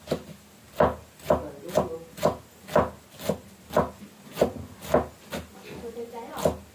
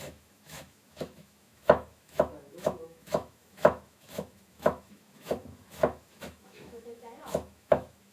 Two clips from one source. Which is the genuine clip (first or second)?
first